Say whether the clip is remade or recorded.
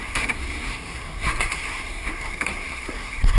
remade